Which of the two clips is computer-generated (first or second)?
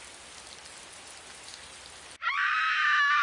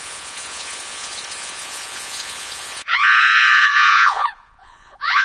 second